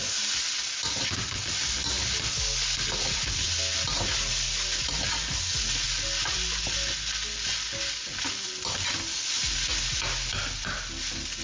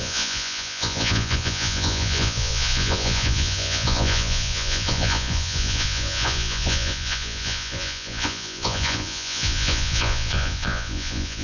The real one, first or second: first